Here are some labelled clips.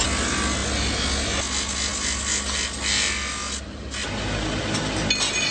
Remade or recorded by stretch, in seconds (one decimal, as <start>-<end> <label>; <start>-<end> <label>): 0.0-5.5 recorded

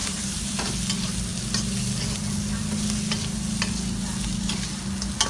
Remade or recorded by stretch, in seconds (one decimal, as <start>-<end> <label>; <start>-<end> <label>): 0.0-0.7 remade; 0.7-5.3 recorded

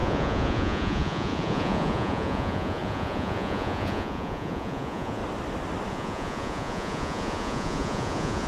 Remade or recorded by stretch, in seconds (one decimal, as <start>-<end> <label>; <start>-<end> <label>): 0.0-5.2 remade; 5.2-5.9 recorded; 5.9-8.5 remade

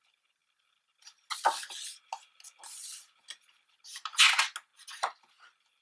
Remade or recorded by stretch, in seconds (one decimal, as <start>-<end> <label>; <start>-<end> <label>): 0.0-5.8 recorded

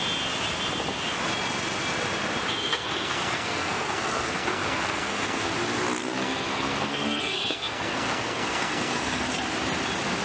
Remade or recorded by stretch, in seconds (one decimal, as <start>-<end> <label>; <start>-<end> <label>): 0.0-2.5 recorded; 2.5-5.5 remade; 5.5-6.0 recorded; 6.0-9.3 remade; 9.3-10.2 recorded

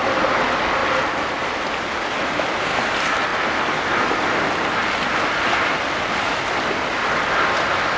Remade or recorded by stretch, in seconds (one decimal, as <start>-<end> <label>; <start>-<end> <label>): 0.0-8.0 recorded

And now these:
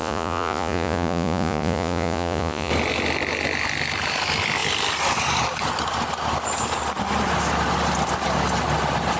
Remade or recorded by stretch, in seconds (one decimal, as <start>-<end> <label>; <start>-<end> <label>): 0.0-2.7 remade; 2.7-9.2 recorded

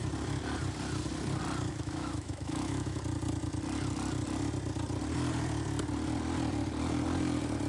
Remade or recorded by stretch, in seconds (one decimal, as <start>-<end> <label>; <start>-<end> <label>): 0.0-1.7 recorded; 1.7-3.0 remade; 3.0-7.7 recorded